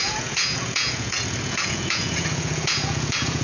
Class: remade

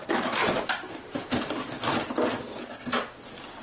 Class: recorded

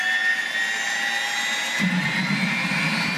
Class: recorded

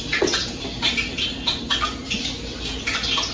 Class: recorded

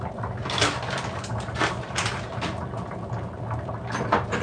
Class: recorded